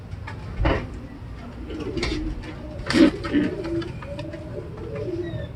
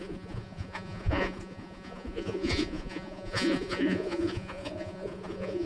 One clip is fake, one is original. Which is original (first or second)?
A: first